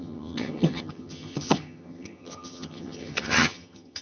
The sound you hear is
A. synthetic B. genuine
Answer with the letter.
A